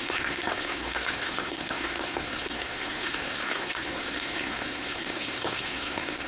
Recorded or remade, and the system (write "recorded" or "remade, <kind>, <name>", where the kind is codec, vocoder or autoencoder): remade, codec, SNAC